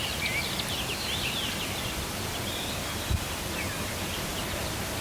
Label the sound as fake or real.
real